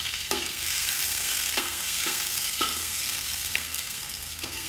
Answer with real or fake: fake